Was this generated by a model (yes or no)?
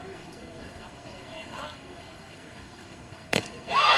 yes